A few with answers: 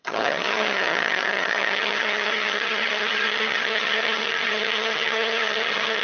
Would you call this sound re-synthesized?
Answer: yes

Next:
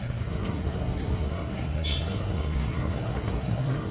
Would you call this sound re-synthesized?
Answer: yes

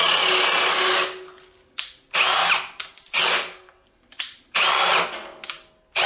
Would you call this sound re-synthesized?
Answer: no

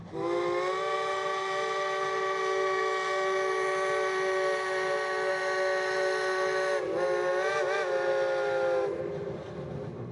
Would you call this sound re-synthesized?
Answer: no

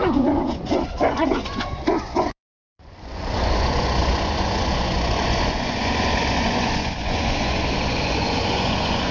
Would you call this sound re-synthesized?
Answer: yes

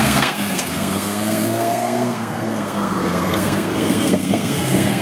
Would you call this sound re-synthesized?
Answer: yes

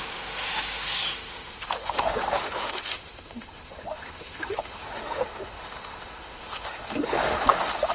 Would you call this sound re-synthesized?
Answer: yes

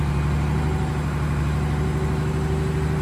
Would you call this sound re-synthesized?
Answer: no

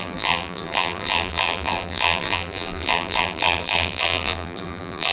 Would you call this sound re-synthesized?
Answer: yes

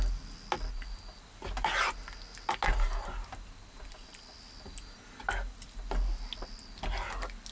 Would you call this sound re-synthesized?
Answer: no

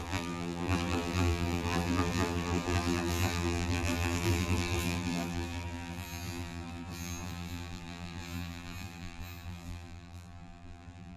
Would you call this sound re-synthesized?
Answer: yes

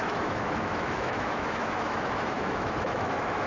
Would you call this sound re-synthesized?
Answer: yes